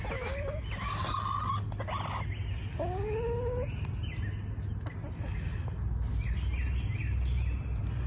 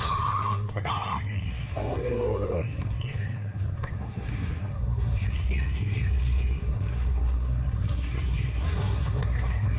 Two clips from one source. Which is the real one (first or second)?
first